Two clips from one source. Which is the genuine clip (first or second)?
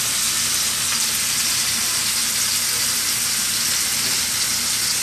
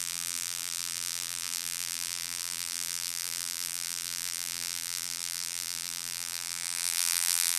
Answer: first